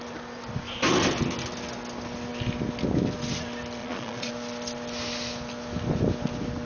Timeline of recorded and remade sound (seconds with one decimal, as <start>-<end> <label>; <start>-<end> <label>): 0.0-3.8 recorded; 3.8-4.3 remade; 4.3-6.7 recorded